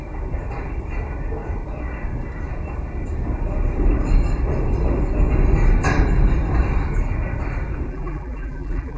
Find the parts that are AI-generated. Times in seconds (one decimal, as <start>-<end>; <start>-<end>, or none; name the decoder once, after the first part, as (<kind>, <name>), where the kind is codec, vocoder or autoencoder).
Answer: 7.9-9.0 (vocoder, BigVGAN v2)